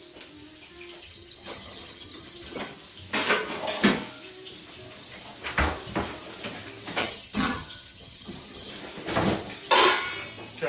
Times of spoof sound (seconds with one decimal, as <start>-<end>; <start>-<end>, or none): 1.0-2.6; 7.0-8.7